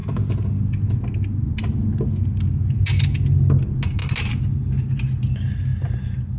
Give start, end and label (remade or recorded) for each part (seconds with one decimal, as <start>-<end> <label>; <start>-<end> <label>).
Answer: 0.0-6.4 recorded